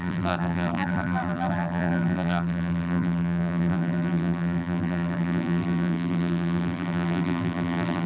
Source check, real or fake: fake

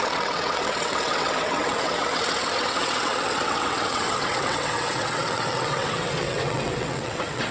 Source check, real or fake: fake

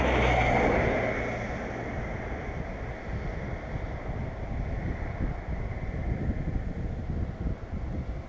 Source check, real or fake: real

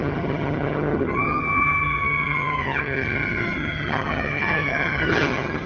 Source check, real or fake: fake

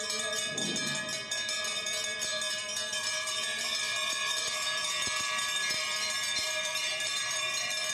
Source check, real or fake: fake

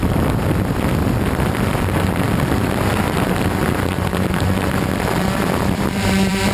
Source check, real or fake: fake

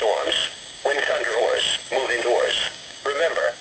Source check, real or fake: fake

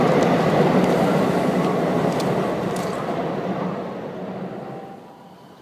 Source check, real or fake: real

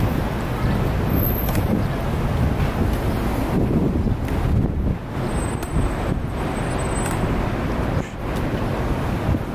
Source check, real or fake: real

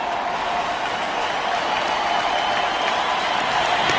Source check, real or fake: real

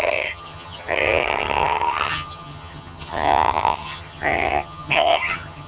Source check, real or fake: fake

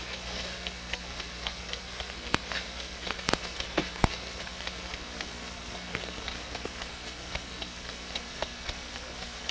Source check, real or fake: fake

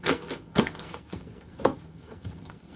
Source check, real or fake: fake